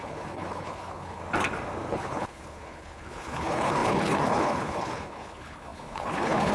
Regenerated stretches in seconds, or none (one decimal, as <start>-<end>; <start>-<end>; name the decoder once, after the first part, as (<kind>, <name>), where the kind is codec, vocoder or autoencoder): 0.0-1.2 (codec, HILCodec); 1.9-6.5